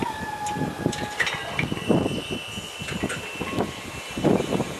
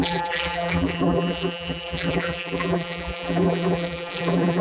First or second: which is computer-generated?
second